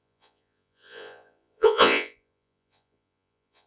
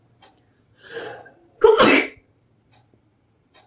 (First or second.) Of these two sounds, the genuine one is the second